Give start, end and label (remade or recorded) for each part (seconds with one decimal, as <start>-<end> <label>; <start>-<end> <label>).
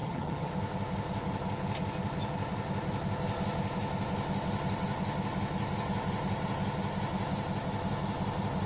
0.0-0.5 remade; 0.5-8.7 recorded